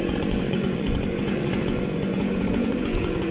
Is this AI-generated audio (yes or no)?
yes